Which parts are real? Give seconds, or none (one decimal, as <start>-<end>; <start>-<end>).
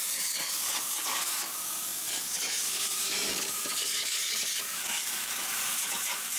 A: none